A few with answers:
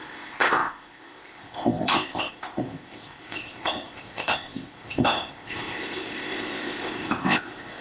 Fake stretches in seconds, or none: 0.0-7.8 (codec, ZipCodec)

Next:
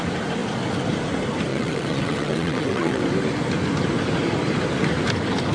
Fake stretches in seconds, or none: 1.5-3.0 (vocoder, WaveNeXt)

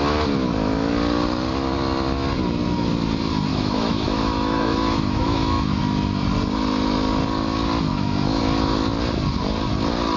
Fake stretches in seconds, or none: 3.5-5.8 (autoencoder, DAC-VAE); 7.9-8.4

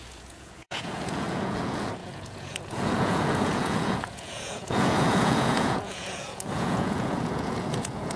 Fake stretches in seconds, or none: 0.0-8.2 (vocoder, Vocos)

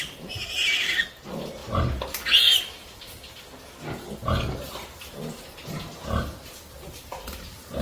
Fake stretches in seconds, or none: 4.2-5.2 (vocoder, BigVGAN v2)